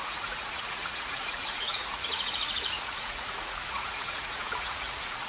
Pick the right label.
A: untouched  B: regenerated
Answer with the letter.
B